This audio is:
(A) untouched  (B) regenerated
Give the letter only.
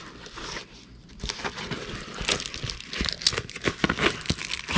A